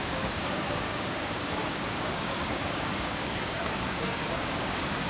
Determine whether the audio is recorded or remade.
remade